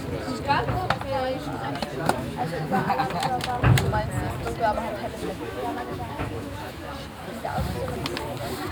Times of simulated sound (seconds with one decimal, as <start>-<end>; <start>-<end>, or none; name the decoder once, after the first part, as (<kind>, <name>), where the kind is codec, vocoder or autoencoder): 1.9-2.9 (autoencoder, DAC-VAE); 5.1-6.9